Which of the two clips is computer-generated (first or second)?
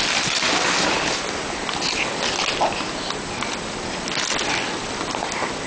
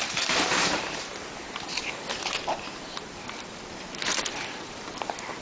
second